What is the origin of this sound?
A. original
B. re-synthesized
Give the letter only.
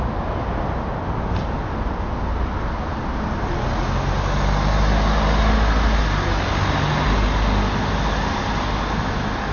A